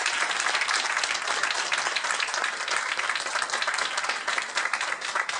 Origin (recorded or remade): recorded